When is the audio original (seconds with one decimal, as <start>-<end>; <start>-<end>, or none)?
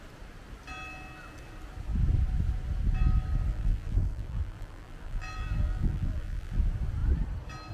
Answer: 0.0-3.5; 6.6-7.7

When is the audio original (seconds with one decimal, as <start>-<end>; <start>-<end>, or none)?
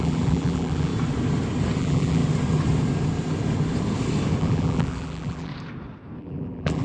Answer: 0.9-1.8; 2.2-4.4; 5.5-6.2